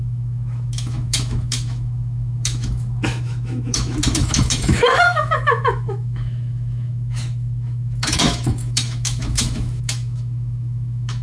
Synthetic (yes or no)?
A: yes